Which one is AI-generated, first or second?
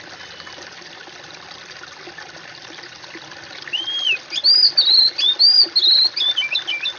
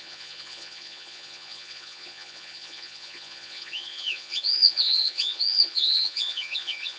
second